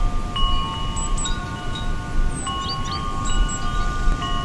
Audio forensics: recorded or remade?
recorded